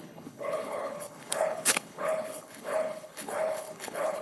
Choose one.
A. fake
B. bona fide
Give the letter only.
A